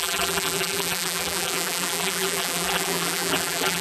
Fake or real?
fake